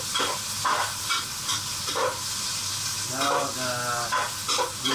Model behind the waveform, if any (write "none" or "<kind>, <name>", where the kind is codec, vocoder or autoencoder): none